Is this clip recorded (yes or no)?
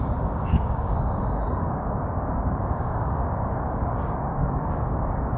no